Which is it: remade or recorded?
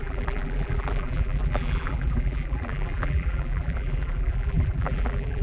remade